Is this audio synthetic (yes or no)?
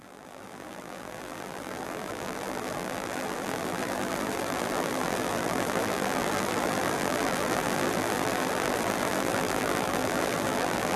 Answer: yes